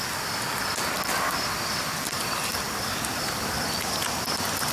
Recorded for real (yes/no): yes